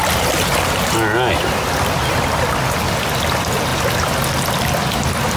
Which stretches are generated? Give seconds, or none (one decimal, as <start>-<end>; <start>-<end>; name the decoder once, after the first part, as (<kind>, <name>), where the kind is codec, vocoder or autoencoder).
none